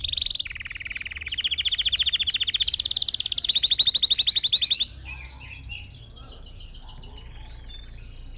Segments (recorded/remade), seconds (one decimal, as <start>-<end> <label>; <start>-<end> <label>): 0.0-8.4 recorded